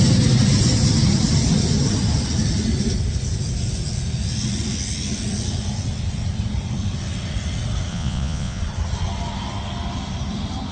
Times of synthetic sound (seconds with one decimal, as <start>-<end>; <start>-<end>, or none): 7.9-8.6